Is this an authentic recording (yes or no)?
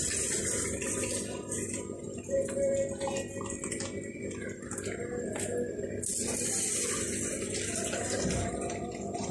yes